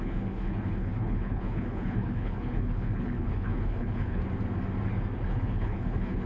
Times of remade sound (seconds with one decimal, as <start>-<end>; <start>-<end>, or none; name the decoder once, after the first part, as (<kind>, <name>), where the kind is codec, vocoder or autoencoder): 0.0-4.2 (codec, HILCodec); 5.3-6.3